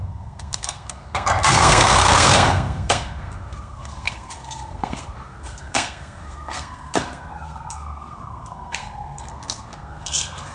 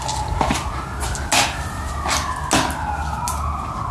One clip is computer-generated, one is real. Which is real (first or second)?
second